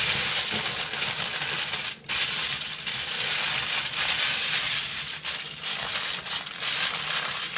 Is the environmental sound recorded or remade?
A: recorded